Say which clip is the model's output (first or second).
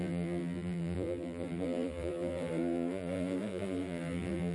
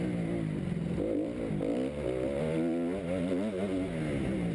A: first